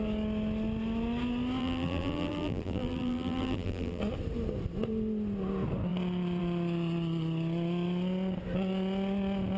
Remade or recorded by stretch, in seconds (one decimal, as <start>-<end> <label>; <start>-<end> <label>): 0.0-1.6 recorded; 1.6-4.0 remade; 4.0-9.6 recorded